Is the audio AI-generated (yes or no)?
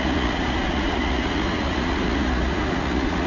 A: yes